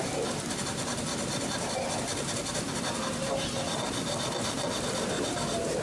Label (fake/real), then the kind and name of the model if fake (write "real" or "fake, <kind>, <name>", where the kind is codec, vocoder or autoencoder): real